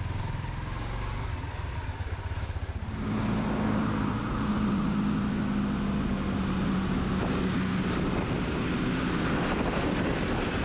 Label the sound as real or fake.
real